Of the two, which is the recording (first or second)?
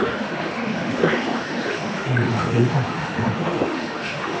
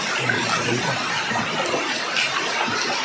second